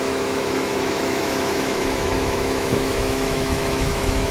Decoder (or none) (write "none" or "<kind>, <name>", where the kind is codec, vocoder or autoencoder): autoencoder, DAC-VAE